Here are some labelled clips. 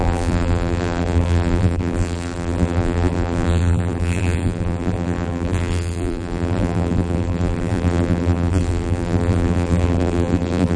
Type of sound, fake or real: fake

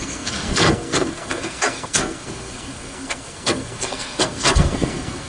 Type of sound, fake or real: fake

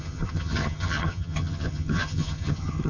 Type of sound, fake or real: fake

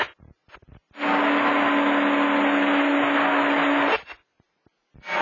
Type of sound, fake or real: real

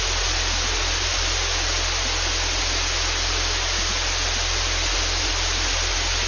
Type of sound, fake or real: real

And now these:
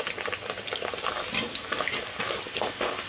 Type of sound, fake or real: real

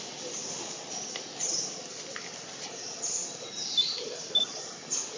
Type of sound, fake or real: real